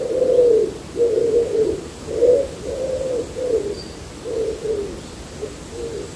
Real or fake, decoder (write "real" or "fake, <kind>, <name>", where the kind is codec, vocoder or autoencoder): real